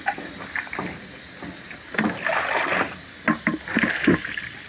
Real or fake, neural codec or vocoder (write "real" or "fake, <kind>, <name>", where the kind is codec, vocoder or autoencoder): real